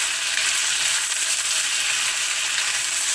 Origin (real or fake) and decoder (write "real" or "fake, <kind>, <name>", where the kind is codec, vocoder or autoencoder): real